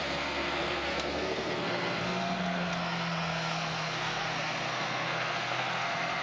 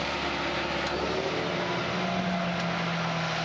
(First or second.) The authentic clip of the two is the second